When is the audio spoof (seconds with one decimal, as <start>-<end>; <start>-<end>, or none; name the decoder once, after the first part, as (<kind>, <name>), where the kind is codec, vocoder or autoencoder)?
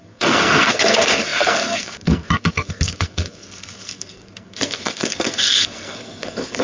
0.0-6.6 (codec, SNAC)